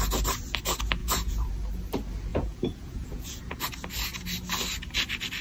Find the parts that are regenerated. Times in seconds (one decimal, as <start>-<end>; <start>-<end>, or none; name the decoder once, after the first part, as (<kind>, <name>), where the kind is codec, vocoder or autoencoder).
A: 1.0-1.5 (vocoder, Vocos); 2.3-3.6